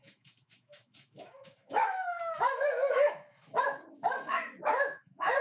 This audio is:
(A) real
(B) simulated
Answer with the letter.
B